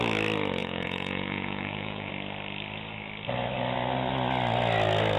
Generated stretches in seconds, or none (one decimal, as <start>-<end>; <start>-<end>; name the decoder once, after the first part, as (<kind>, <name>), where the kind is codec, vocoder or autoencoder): 0.6-2.1 (vocoder, Vocos)